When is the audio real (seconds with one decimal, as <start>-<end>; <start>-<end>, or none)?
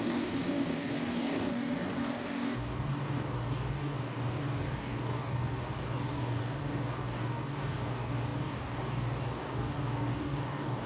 none